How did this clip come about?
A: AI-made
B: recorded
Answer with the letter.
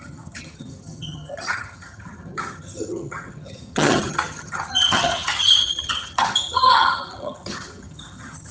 A